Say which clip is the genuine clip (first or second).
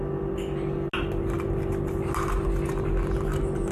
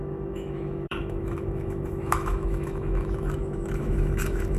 first